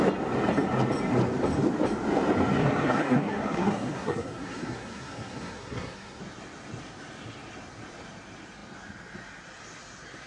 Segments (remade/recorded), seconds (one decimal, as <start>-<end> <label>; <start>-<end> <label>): 0.0-2.6 recorded; 2.6-6.2 remade; 6.2-10.3 recorded